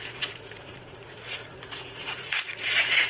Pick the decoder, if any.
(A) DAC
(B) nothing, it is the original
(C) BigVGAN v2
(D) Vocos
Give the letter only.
D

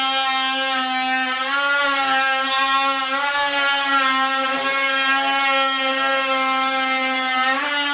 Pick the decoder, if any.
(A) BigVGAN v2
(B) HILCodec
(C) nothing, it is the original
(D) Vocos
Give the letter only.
C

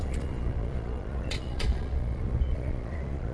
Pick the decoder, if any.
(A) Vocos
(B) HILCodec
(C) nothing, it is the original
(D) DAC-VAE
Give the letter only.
A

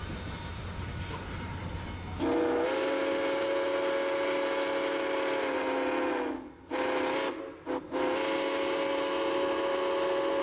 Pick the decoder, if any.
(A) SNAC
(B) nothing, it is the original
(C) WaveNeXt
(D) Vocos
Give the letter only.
B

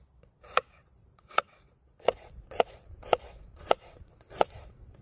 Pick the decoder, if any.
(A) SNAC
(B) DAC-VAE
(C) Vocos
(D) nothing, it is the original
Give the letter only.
C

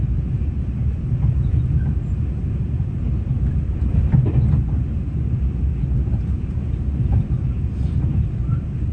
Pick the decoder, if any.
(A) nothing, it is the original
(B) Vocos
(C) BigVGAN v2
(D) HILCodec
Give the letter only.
A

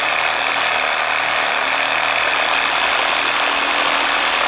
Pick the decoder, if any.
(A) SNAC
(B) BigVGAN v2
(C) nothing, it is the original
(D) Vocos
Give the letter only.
C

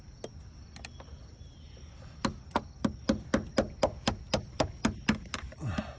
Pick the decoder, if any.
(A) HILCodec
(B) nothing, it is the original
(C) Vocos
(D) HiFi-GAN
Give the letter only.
B